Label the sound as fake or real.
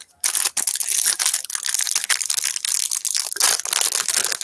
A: real